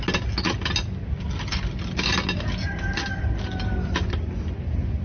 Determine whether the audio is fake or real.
real